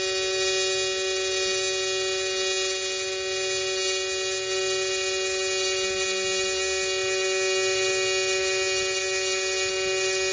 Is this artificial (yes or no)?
no